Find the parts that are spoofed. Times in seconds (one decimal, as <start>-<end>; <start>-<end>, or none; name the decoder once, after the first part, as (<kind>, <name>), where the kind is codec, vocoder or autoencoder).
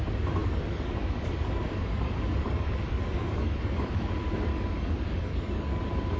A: 0.4-4.1 (codec, DAC); 4.5-5.8